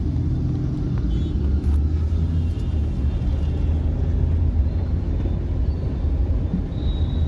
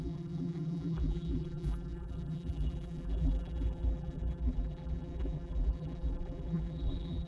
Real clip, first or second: first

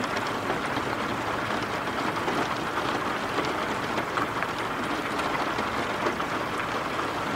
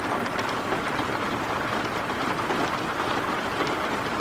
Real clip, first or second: first